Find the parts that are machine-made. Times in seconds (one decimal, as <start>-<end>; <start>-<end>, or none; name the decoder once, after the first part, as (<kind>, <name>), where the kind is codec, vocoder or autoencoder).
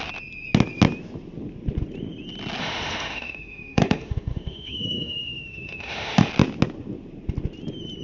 2.6-6.3 (autoencoder, DAC-VAE)